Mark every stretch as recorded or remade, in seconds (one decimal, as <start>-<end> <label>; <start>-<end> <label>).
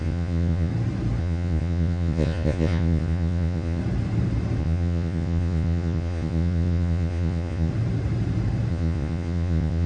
0.0-0.7 remade; 0.7-1.2 recorded; 1.2-3.8 remade; 3.8-4.6 recorded; 4.6-7.7 remade; 7.7-8.7 recorded; 8.7-9.9 remade